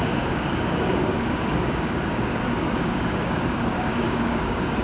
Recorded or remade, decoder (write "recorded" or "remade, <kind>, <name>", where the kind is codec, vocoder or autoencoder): remade, codec, DAC